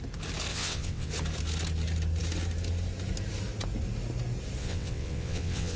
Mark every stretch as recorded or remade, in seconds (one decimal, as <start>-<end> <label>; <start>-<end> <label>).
0.0-0.5 recorded; 0.5-1.1 remade; 1.1-4.6 recorded; 4.6-5.8 remade